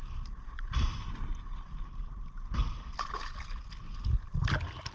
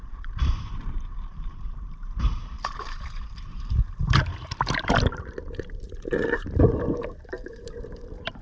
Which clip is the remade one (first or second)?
second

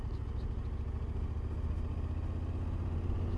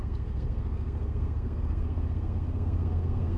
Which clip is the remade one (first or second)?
second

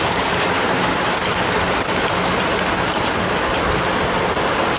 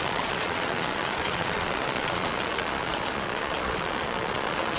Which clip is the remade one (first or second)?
second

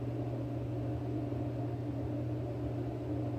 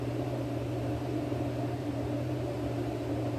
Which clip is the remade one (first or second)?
second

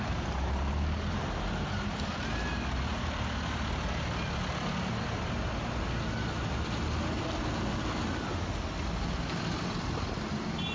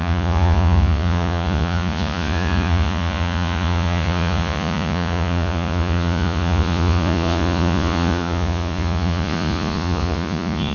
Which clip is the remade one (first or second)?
second